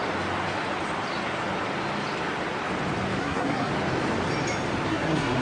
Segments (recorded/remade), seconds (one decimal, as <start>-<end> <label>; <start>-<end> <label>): 0.0-3.2 recorded; 3.2-3.7 remade; 3.7-4.9 recorded; 4.9-5.4 remade